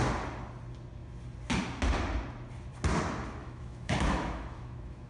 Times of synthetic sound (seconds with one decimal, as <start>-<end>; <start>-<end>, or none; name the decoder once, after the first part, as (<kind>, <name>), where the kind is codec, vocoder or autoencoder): 3.4-5.1 (autoencoder, DAC-VAE)